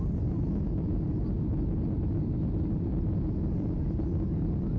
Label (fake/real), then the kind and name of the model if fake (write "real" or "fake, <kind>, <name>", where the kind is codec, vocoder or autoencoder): real